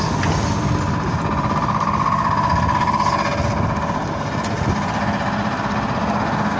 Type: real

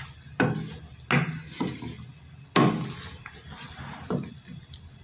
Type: real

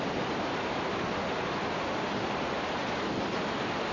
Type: real